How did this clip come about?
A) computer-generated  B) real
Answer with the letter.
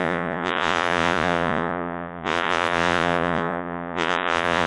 A